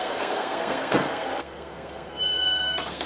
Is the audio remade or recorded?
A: remade